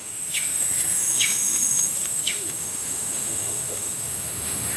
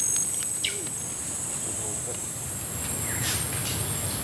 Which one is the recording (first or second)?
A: second